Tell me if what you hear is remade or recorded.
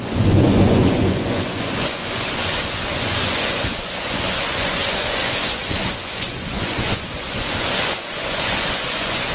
remade